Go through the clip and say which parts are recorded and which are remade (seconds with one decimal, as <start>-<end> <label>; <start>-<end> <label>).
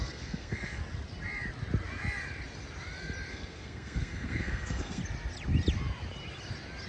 0.0-0.8 remade; 0.8-3.3 recorded; 3.3-5.0 remade; 5.0-6.9 recorded